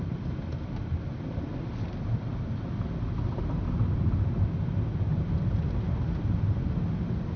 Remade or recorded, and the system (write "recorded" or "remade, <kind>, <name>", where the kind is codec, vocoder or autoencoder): recorded